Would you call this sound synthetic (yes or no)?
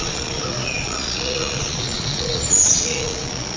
yes